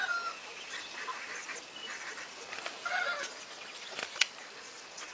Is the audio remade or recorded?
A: recorded